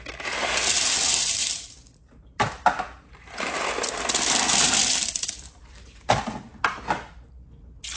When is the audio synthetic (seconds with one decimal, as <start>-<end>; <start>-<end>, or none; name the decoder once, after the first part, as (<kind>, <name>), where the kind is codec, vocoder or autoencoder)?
1.4-5.7 (vocoder, BigVGAN v2)